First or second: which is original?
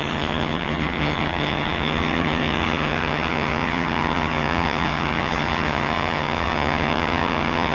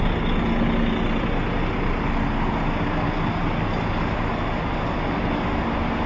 second